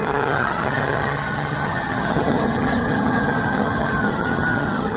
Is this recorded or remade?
remade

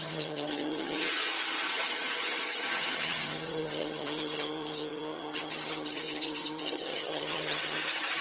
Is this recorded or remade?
remade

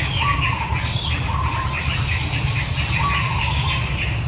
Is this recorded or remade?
recorded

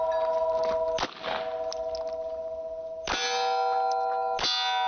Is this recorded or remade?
recorded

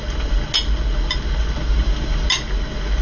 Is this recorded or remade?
recorded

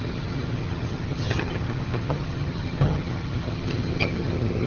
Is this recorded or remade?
remade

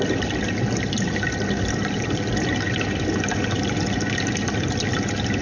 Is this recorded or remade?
recorded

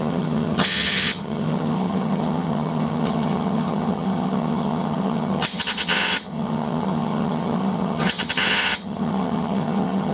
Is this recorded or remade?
remade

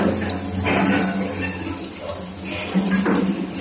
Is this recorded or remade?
recorded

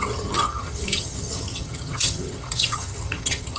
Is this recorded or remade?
remade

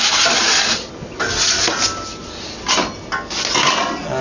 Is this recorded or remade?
recorded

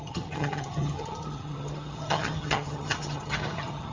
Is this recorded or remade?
remade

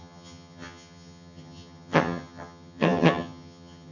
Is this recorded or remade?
remade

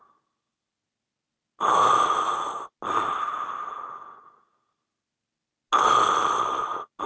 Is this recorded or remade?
recorded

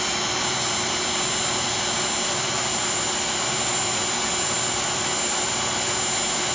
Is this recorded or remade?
recorded